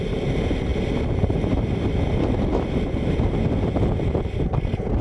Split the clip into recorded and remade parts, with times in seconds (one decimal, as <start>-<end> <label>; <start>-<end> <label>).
0.0-5.0 recorded